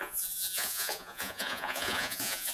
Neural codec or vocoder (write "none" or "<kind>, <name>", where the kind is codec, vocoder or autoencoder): vocoder, Vocos